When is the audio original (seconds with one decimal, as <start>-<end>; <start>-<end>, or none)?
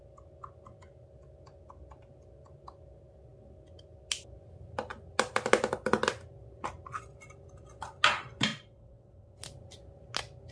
0.0-8.5; 9.4-10.5